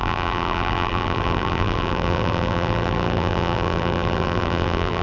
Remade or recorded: remade